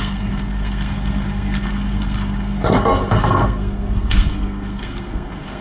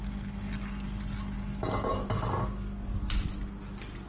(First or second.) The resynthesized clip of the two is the first